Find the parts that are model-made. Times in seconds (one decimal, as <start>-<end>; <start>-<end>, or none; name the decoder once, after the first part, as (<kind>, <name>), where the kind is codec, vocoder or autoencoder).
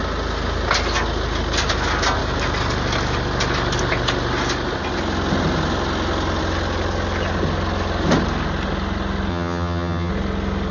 9.3-10.1 (vocoder, HiFi-GAN)